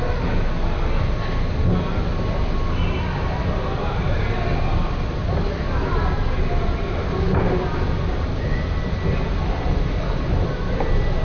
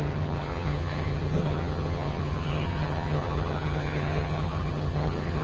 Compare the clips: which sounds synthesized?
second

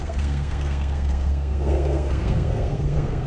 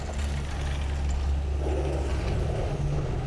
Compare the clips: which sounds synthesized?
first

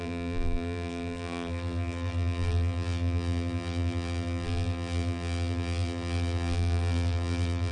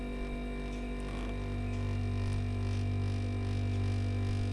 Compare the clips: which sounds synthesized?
first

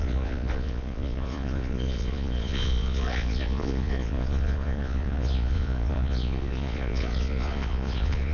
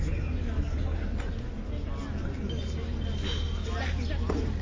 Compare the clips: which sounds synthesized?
first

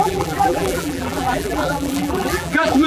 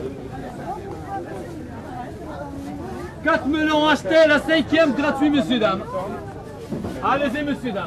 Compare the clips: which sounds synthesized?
first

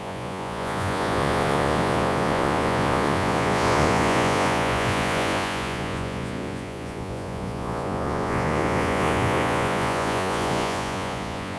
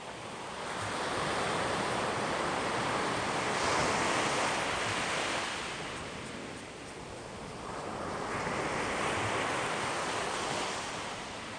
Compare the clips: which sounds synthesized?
first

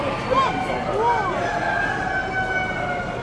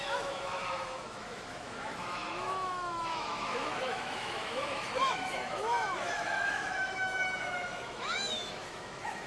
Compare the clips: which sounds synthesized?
second